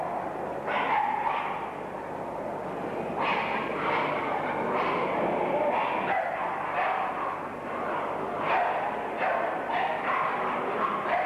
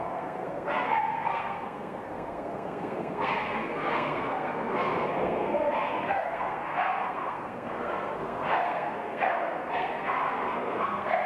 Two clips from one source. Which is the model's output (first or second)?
second